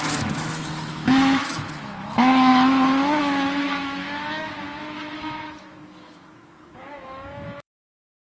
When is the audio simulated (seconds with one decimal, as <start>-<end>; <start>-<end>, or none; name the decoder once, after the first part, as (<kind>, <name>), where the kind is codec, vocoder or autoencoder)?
0.0-2.5 (autoencoder, DAC-VAE); 3.2-8.4